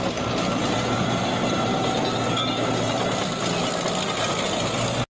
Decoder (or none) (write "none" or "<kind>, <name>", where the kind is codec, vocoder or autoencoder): none